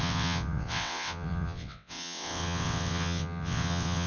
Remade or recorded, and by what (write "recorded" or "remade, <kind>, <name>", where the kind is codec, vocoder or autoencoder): remade, vocoder, WaveNeXt